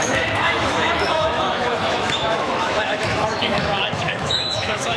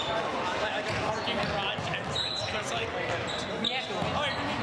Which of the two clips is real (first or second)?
second